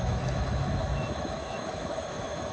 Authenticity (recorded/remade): remade